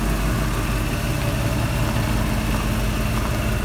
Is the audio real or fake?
real